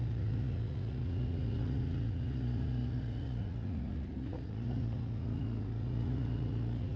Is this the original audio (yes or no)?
no